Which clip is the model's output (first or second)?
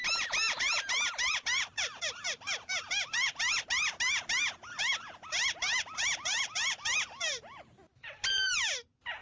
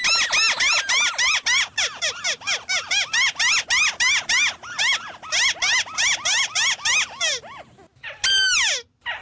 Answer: first